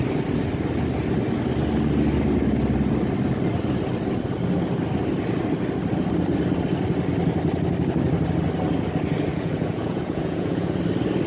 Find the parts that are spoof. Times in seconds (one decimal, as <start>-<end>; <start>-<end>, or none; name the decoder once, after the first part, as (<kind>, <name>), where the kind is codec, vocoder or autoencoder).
9.3-10.8 (vocoder, Vocos)